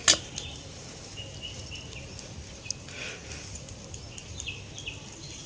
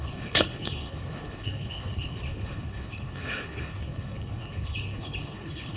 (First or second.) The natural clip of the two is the first